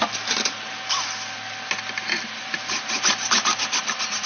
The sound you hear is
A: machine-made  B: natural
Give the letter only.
B